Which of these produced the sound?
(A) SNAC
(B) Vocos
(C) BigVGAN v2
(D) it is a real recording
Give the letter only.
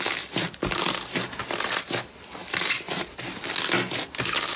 D